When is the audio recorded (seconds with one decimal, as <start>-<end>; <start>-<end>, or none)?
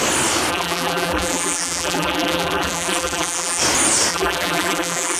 0.0-0.5; 3.6-4.1